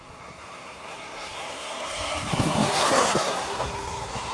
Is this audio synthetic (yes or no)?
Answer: yes